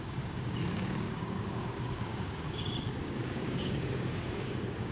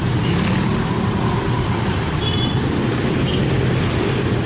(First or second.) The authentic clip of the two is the second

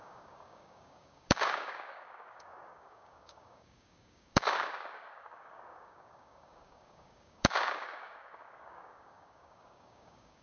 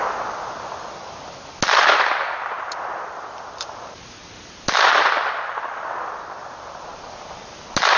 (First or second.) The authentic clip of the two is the second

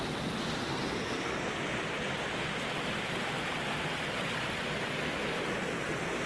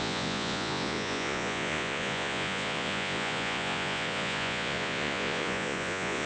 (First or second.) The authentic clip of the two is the first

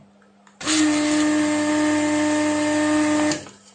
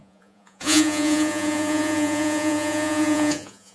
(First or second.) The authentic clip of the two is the first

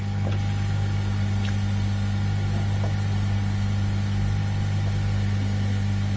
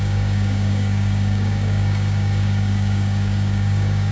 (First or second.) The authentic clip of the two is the first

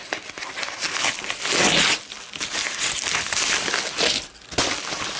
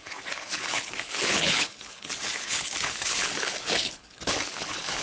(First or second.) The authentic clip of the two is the first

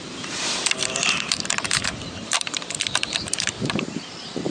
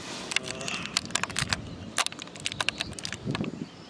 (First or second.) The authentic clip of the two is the second